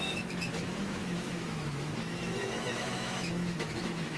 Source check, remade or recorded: remade